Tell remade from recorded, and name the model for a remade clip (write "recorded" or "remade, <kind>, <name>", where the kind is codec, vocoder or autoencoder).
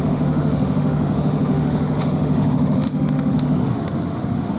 remade, autoencoder, DAC-VAE